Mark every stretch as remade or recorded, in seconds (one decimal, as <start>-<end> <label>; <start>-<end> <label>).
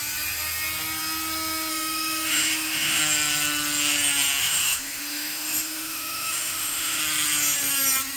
0.0-1.7 recorded; 1.7-3.0 remade; 3.0-4.4 recorded; 4.4-7.0 remade; 7.0-8.2 recorded